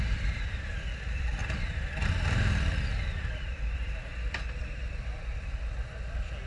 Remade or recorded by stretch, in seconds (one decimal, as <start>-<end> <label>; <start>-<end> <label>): 0.0-1.4 remade; 1.4-2.2 recorded; 2.2-4.1 remade; 4.1-6.5 recorded